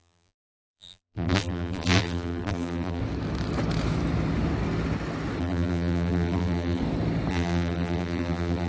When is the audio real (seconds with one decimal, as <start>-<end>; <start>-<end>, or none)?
3.0-5.4; 6.8-7.3